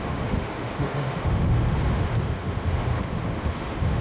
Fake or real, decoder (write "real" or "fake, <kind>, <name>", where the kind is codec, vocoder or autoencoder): fake, autoencoder, DAC-VAE